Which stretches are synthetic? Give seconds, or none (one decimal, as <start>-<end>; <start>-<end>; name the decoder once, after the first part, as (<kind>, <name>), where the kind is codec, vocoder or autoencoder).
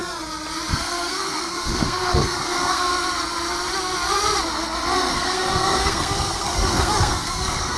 0.7-2.9 (codec, SNAC); 5.1-7.8